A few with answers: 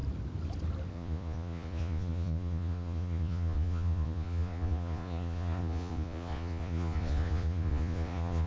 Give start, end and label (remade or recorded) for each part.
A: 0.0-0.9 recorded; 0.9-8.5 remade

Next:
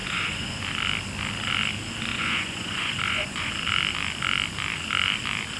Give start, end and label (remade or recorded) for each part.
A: 0.0-0.6 remade; 0.6-2.1 recorded; 2.1-3.5 remade; 3.5-5.6 recorded

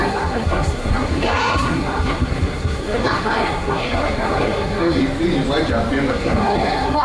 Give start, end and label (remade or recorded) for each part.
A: 0.0-5.0 remade; 5.0-6.1 recorded; 6.1-7.0 remade

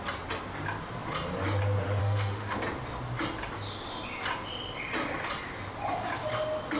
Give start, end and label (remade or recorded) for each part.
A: 0.0-2.0 recorded; 2.0-2.6 remade; 2.6-6.8 recorded

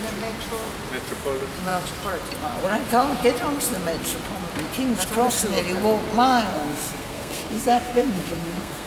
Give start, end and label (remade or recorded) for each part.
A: 0.0-6.5 recorded; 6.5-8.9 remade